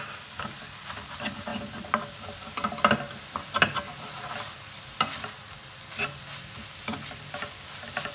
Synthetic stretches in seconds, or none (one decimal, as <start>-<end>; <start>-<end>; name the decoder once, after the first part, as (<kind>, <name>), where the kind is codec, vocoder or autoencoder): none